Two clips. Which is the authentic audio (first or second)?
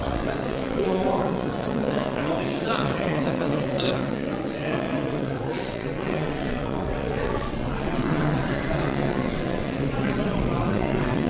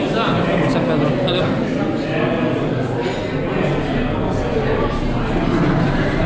second